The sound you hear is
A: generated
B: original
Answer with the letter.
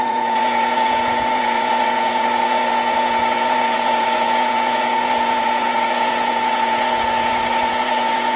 A